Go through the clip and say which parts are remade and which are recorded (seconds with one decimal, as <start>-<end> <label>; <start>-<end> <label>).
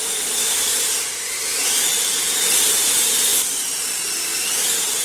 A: 0.0-3.3 remade; 3.3-3.8 recorded; 3.8-5.0 remade